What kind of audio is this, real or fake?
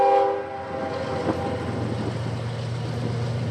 real